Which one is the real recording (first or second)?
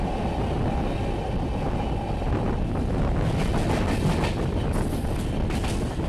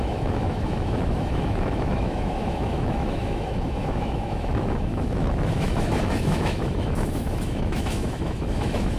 first